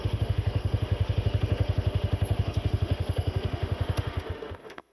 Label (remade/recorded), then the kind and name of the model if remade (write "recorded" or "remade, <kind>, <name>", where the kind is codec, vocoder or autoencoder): remade, autoencoder, DAC-VAE